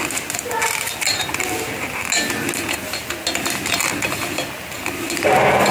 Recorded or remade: recorded